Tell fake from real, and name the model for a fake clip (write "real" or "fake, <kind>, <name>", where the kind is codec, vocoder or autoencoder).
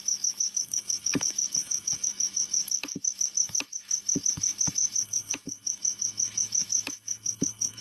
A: fake, autoencoder, DAC-VAE